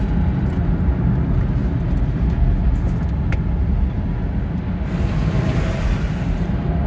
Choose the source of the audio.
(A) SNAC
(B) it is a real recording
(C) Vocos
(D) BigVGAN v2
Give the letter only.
B